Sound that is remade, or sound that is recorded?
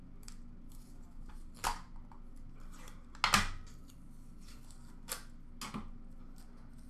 recorded